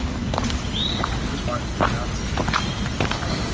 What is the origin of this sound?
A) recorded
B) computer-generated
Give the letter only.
A